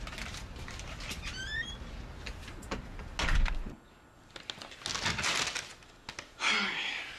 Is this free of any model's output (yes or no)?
yes